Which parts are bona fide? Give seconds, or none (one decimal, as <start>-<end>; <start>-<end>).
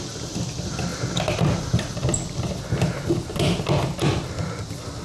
0.0-5.0